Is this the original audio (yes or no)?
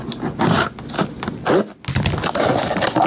yes